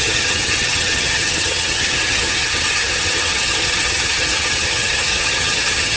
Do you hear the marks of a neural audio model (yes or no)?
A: yes